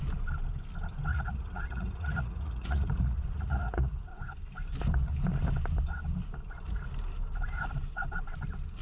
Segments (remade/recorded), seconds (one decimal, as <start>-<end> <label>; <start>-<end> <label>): 0.0-1.1 recorded; 1.1-4.1 remade; 4.1-8.8 recorded